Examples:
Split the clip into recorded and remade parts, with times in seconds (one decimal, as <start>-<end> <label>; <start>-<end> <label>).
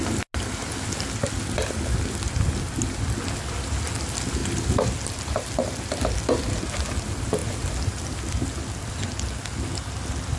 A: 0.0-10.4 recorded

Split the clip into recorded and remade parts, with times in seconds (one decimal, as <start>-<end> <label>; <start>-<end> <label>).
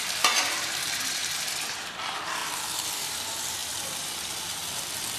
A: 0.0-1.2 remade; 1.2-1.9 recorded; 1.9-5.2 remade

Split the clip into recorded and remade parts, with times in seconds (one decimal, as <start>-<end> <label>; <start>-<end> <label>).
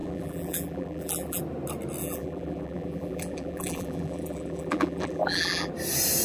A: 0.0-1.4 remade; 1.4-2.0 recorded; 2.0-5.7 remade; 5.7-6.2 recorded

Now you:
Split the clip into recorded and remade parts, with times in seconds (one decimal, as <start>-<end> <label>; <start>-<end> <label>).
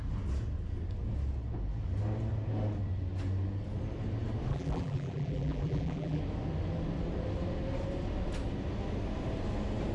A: 0.0-4.5 recorded; 4.5-6.2 remade; 6.2-9.9 recorded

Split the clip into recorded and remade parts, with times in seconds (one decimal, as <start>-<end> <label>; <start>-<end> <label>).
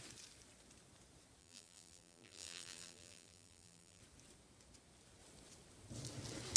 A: 0.0-1.4 recorded; 1.4-4.0 remade; 4.0-6.6 recorded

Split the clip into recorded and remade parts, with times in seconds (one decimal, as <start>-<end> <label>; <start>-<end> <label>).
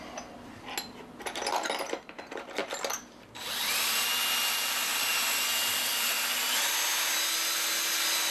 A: 0.0-2.6 recorded; 2.6-3.4 remade; 3.4-8.3 recorded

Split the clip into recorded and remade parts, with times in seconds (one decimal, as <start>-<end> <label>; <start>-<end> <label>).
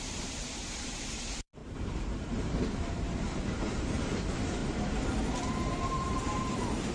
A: 0.0-4.6 remade; 4.6-5.2 recorded; 5.2-6.9 remade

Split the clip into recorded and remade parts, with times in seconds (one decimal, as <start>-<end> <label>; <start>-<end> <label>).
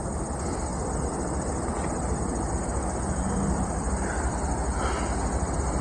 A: 0.0-4.3 remade; 4.3-5.8 recorded